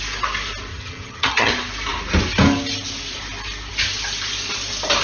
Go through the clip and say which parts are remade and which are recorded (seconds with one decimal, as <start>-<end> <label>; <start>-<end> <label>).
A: 0.0-0.7 recorded; 0.7-1.5 remade; 1.5-5.0 recorded